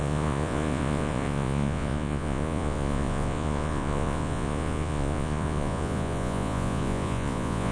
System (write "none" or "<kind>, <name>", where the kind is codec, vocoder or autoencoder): vocoder, Vocos